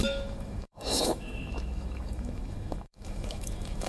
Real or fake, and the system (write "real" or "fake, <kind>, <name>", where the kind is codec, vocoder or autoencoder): fake, autoencoder, DAC-VAE